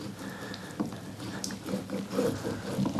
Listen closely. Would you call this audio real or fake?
real